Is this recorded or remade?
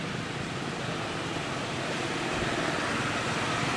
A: recorded